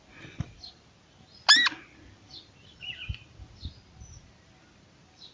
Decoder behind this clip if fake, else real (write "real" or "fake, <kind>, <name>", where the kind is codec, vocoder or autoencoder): real